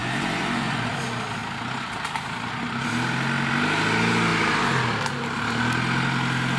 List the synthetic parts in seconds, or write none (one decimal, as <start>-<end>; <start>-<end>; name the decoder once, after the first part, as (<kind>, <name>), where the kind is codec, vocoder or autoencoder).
0.0-0.9 (vocoder, Vocos)